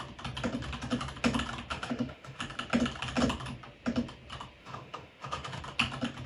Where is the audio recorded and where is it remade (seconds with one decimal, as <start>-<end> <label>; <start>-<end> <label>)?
0.0-1.7 recorded; 1.7-2.4 remade; 2.4-4.6 recorded; 4.6-5.6 remade; 5.6-6.3 recorded